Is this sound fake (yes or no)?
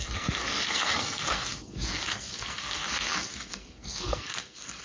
yes